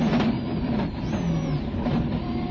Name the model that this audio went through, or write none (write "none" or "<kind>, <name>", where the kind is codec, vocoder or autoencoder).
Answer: vocoder, BigVGAN v2